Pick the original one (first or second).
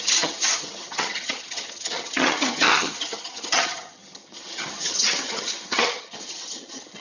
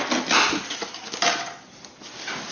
second